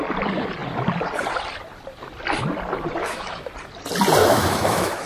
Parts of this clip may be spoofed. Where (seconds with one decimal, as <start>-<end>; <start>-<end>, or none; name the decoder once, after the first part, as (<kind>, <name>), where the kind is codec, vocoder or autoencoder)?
3.0-3.5 (autoencoder, DAC-VAE); 4.2-5.1